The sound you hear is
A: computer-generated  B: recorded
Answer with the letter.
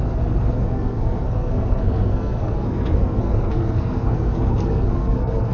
A